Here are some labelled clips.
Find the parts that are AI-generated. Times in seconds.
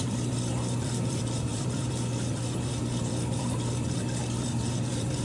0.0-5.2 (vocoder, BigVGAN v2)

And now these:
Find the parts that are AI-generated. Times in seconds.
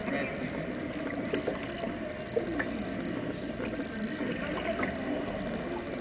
0.0-0.8 (vocoder, BigVGAN v2)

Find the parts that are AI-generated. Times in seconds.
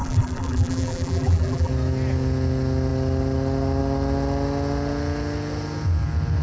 0.0-1.7 (vocoder, BigVGAN v2)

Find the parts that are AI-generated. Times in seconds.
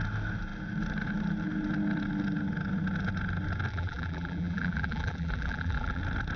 3.7-6.0 (vocoder, BigVGAN v2)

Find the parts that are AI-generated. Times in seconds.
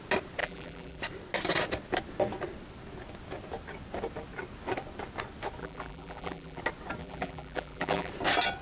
0.4-1.0 (vocoder, BigVGAN v2); 5.6-6.6; 7.0-8.1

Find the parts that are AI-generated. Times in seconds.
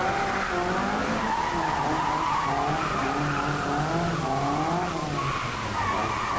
none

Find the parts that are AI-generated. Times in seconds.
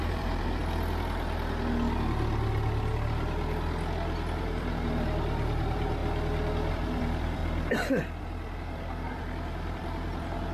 0.0-0.6 (vocoder, BigVGAN v2); 4.4-6.0; 6.7-7.4; 8.2-10.5